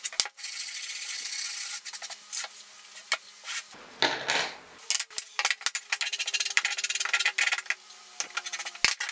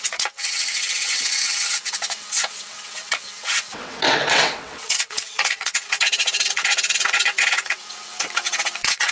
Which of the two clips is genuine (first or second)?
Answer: first